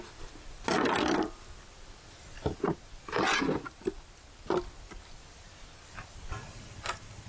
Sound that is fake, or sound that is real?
real